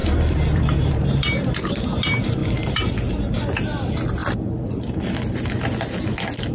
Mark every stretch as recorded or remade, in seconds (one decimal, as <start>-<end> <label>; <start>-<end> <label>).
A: 0.0-0.9 remade; 0.9-2.4 recorded; 2.4-2.9 remade; 2.9-4.2 recorded; 4.2-5.5 remade; 5.5-6.5 recorded